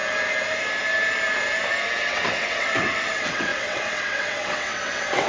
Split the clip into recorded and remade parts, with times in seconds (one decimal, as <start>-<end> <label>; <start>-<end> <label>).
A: 0.0-2.0 recorded; 2.0-5.3 remade